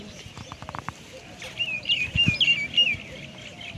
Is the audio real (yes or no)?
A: yes